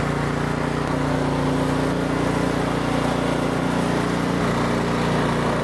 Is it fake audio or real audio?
real